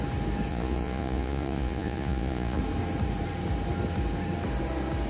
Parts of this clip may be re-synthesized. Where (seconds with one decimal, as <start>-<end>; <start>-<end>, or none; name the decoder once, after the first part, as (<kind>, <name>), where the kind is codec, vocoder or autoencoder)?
0.5-2.6 (vocoder, Vocos)